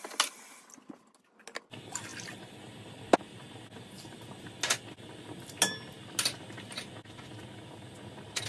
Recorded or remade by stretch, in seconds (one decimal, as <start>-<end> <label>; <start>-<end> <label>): 0.0-8.5 recorded